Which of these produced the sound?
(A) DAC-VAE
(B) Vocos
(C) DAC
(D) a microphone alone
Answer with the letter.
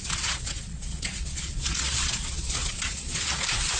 B